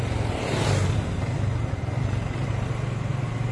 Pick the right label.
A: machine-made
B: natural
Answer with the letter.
B